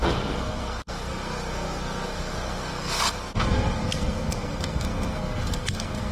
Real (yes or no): no